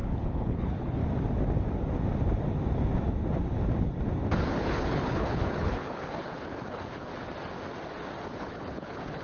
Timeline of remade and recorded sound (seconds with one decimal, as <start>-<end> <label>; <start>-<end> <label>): 0.0-1.0 remade; 1.0-4.4 recorded; 4.4-7.1 remade; 7.1-8.2 recorded; 8.2-9.2 remade

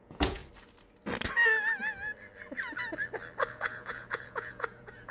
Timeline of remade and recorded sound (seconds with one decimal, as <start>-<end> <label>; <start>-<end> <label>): 0.0-0.4 remade; 0.4-3.5 recorded; 3.5-5.1 remade

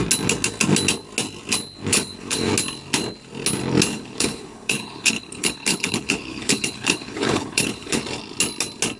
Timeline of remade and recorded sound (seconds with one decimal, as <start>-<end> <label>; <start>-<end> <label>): 0.0-1.9 recorded; 1.9-2.5 remade; 2.5-3.9 recorded; 3.9-8.0 remade; 8.0-9.0 recorded